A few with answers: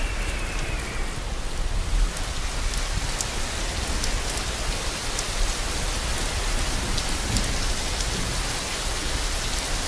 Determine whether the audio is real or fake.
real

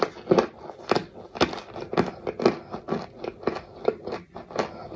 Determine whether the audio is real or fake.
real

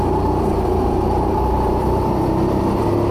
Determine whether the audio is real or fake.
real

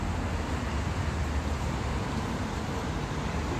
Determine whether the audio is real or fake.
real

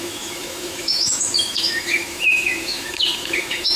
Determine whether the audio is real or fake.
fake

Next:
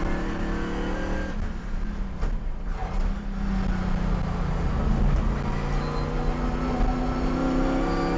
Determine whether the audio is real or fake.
real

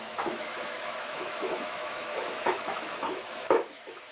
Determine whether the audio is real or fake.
fake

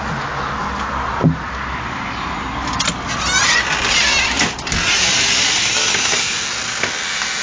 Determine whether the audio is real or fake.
real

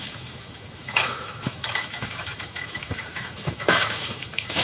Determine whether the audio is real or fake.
fake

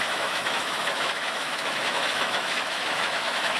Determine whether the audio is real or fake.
fake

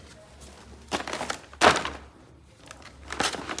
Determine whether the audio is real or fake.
real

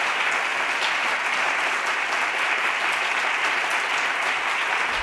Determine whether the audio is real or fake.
real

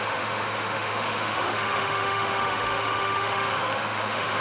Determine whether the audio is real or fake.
fake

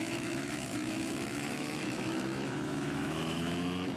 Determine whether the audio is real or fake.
fake